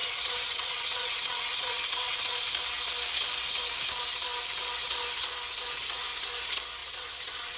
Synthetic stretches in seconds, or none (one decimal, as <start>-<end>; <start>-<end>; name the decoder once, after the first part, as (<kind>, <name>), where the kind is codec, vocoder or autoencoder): 0.0-2.3 (vocoder, WaveNeXt); 6.8-7.6